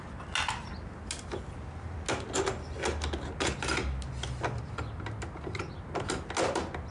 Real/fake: real